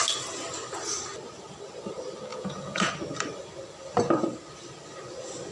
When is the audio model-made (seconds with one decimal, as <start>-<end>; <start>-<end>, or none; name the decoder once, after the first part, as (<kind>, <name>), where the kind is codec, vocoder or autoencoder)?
2.3-2.9 (vocoder, Vocos)